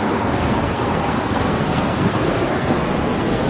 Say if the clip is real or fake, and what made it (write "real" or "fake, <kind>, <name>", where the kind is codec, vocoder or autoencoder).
fake, codec, SNAC